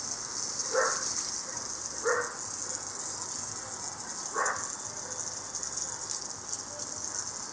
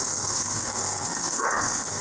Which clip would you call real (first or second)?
first